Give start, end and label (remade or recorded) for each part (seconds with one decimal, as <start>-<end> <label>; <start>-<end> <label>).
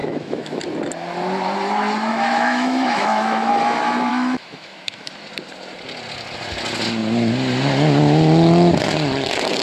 0.0-0.6 remade; 0.6-2.1 recorded; 2.1-3.5 remade; 3.5-4.1 recorded; 4.1-5.1 remade; 5.1-9.6 recorded